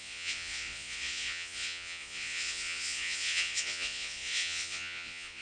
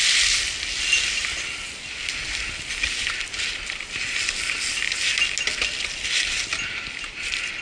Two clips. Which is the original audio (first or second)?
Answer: second